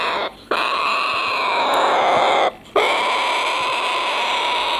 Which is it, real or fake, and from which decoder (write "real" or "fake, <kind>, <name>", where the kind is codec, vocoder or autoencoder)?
fake, vocoder, BigVGAN v2